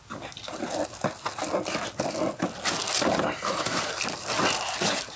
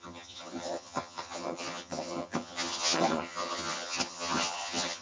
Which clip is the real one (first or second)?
first